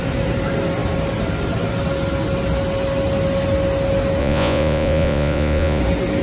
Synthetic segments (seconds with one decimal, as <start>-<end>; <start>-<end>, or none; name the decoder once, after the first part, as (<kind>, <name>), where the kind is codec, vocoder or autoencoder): 4.2-5.8 (vocoder, Vocos)